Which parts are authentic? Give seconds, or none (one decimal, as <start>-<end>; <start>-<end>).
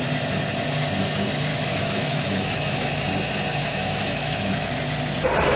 0.0-1.5; 3.1-3.6; 4.8-5.6